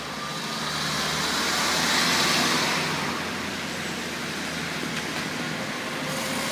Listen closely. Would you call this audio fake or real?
real